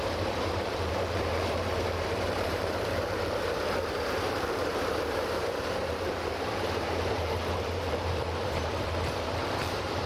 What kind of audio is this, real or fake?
fake